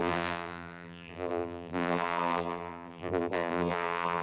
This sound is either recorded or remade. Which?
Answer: remade